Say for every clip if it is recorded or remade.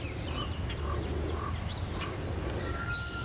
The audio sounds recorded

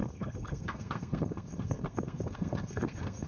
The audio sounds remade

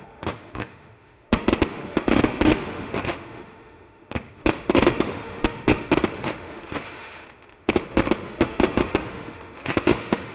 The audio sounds remade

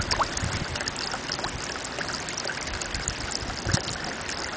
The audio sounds recorded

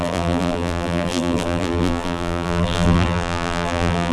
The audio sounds remade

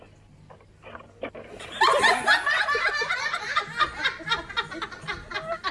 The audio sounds recorded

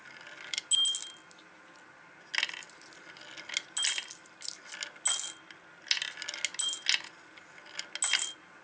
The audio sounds recorded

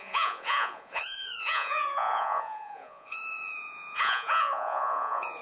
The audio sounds remade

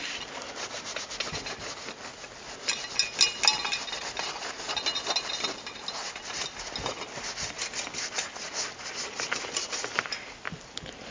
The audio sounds recorded